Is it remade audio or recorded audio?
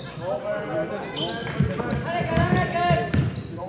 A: recorded